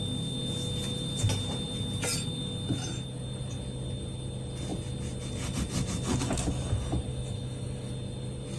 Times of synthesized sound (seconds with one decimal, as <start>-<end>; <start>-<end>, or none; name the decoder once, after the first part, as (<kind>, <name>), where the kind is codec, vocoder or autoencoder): 7.1-7.9 (autoencoder, DAC-VAE)